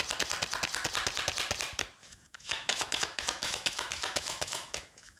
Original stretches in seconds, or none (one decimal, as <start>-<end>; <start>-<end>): 0.0-2.0

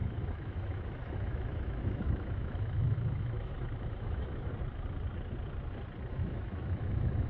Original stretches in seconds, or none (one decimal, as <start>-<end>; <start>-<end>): 4.5-6.1

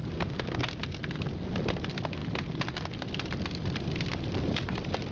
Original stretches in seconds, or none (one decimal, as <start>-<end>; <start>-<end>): 0.0-5.1

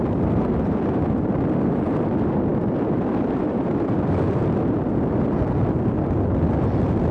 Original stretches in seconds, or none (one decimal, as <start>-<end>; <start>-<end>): 0.0-7.1

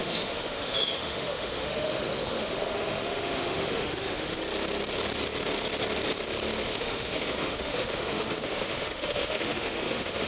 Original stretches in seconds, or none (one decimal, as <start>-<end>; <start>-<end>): 4.4-6.6

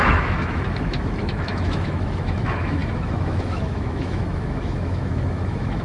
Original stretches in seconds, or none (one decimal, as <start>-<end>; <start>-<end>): none